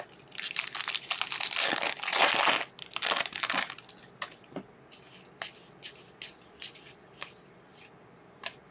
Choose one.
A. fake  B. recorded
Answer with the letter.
B